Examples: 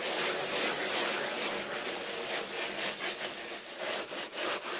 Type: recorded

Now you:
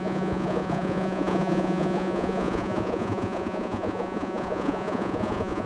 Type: remade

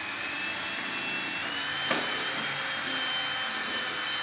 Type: recorded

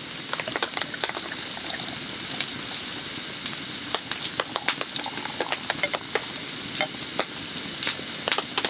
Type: recorded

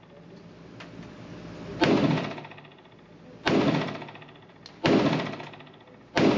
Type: recorded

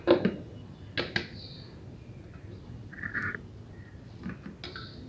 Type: recorded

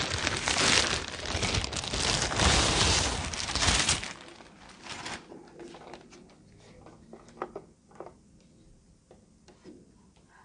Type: recorded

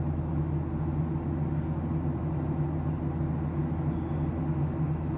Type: recorded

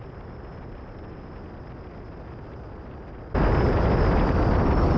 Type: recorded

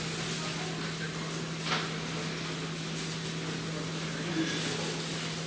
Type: recorded